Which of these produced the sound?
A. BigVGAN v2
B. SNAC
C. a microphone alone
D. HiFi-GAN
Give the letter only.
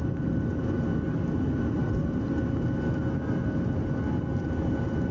C